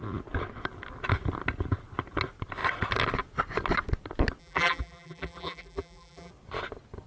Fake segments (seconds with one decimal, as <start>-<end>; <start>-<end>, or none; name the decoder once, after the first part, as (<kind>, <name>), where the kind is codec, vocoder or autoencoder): 4.4-6.3 (vocoder, BigVGAN v2)